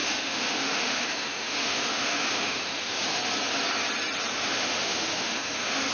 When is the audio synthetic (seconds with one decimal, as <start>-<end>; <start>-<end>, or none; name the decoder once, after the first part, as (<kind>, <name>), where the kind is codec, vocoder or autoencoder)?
0.0-3.2 (autoencoder, DAC-VAE); 4.3-5.9